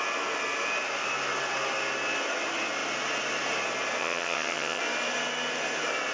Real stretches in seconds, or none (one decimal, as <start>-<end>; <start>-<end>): 0.0-4.0; 4.8-6.1